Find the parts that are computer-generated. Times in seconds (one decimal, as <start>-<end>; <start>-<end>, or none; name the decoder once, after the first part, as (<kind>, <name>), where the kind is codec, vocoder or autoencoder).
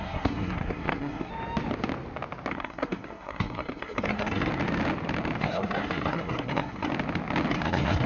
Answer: 0.0-1.3 (codec, SNAC); 2.5-4.5; 5.4-6.9; 7.5-8.1